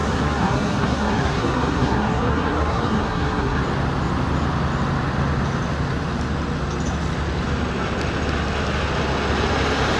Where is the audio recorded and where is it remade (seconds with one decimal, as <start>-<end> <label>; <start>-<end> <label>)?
0.0-3.6 remade; 3.6-10.0 recorded